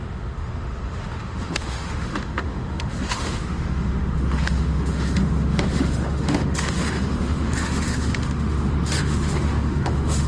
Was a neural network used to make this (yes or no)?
yes